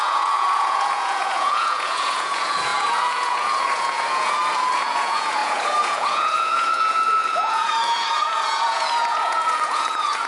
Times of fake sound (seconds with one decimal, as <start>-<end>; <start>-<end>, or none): 0.0-10.3